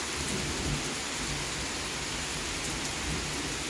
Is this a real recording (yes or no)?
yes